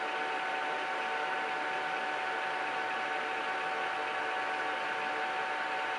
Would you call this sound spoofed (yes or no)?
no